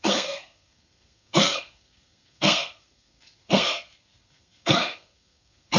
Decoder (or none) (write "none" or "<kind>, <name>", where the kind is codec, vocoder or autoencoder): codec, SNAC